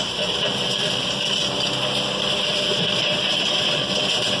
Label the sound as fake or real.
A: real